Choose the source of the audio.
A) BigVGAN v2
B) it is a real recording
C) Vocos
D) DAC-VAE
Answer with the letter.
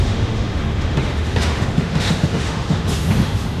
D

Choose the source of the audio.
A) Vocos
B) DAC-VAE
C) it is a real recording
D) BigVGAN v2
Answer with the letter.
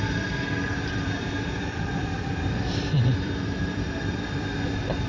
D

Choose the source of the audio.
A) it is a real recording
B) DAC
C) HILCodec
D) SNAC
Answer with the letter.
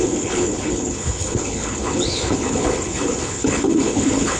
C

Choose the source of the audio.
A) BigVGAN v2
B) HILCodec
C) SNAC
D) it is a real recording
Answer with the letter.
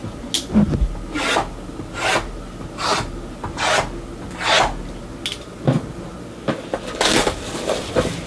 D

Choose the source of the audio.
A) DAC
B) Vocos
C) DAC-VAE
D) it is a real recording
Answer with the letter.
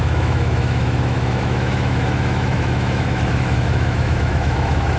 C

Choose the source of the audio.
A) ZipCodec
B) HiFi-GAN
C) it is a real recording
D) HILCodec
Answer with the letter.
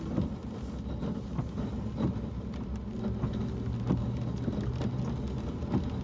C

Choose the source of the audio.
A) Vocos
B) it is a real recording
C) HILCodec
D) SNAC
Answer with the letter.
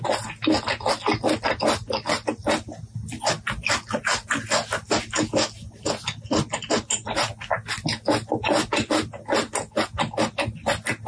B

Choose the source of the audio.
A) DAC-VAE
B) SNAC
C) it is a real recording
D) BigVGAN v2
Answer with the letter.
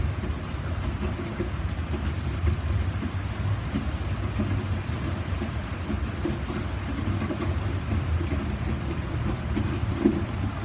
C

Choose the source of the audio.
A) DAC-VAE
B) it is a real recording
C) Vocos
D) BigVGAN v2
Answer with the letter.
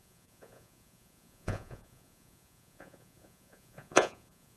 C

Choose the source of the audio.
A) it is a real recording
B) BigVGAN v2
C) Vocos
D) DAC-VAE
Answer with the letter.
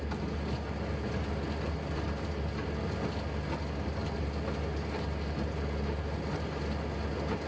A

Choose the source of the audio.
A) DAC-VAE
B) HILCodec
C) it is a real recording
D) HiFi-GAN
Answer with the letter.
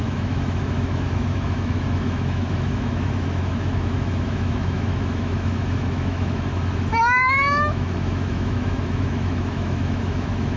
A